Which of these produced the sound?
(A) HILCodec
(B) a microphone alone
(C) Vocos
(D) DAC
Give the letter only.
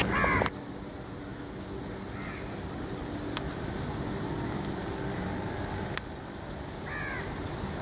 B